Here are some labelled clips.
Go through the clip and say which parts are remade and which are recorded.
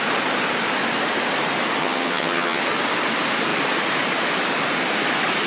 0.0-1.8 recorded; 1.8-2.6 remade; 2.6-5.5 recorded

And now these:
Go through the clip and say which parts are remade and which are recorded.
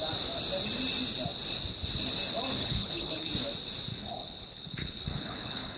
0.0-2.6 recorded; 2.6-3.3 remade; 3.3-3.9 recorded; 3.9-5.8 remade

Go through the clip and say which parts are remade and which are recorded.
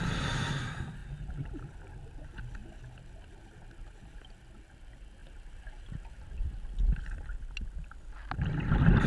0.0-1.0 recorded; 1.0-1.7 remade; 1.7-5.2 recorded; 5.2-6.8 remade; 6.8-9.1 recorded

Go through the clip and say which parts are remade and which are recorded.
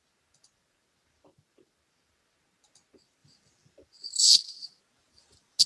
0.0-3.2 recorded; 3.2-4.7 remade; 4.7-5.7 recorded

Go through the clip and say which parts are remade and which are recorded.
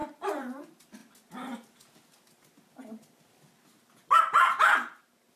0.0-1.0 remade; 1.0-4.2 recorded; 4.2-5.4 remade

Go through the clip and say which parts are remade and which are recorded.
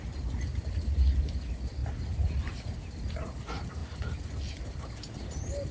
0.0-5.7 recorded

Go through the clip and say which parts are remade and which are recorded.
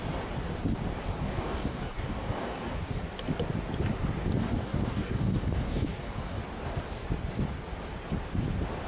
0.0-1.2 recorded; 1.2-2.9 remade; 2.9-4.4 recorded; 4.4-6.4 remade; 6.4-8.9 recorded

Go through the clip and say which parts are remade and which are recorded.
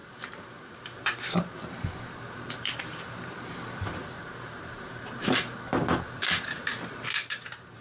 0.0-5.7 remade; 5.7-6.2 recorded; 6.2-7.8 remade